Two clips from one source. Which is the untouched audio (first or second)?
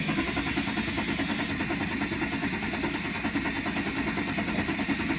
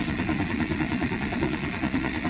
first